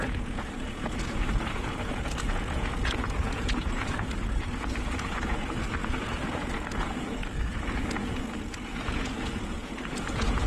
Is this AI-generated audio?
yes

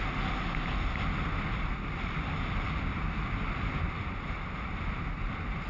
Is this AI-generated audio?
no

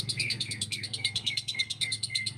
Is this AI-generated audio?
yes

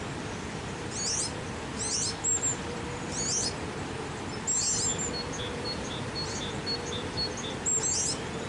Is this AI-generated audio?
no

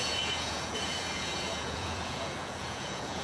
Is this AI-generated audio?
yes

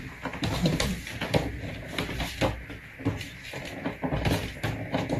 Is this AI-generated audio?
no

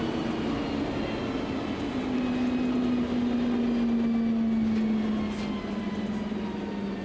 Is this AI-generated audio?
no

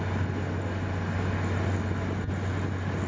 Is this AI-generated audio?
no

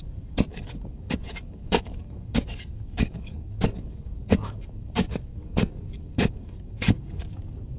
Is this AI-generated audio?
yes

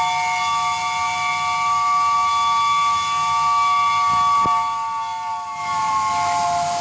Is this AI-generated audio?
no